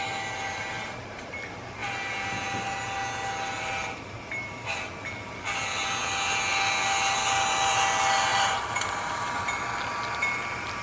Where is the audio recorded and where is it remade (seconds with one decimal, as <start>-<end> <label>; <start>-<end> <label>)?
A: 0.0-8.3 recorded; 8.3-9.4 remade; 9.4-10.8 recorded